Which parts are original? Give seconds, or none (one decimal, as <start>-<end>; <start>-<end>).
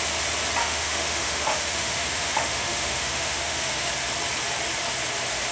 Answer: 0.0-0.6; 3.9-5.5